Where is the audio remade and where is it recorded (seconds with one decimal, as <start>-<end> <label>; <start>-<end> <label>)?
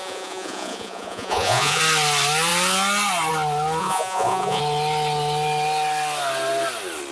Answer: 0.0-1.8 remade; 1.8-3.8 recorded; 3.8-4.6 remade; 4.6-7.1 recorded